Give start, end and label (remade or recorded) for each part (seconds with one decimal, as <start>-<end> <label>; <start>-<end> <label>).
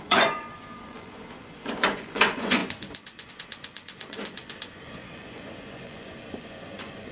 0.0-7.1 remade